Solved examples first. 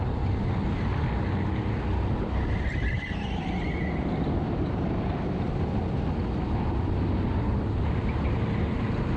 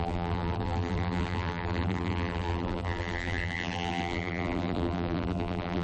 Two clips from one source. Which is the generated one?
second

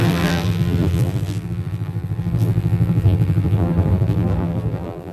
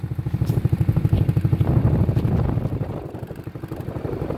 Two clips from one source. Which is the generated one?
first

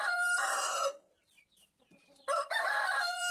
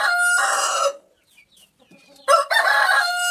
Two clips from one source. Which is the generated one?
first